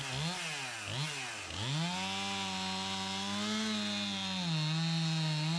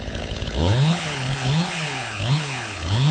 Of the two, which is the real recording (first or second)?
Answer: first